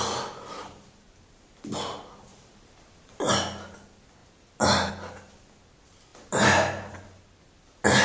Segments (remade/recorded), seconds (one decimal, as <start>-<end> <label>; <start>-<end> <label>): 0.0-2.3 recorded; 2.3-3.3 remade; 3.3-4.2 recorded; 4.2-4.9 remade; 4.9-6.1 recorded; 6.1-7.2 remade; 7.2-8.0 recorded